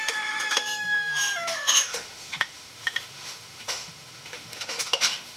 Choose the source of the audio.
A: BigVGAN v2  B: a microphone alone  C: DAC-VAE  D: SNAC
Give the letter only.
C